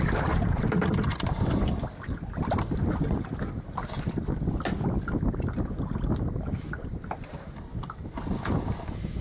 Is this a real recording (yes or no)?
yes